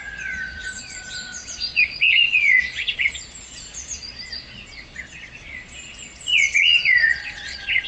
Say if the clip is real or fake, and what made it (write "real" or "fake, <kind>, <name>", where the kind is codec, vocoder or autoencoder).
fake, vocoder, Vocos